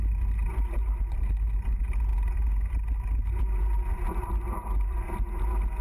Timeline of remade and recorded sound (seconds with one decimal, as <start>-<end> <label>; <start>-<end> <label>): 0.0-5.8 recorded